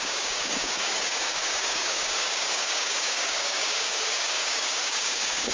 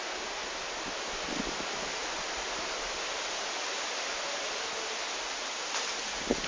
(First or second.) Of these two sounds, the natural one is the second